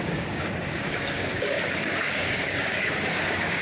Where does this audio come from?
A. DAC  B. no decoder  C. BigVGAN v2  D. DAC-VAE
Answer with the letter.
A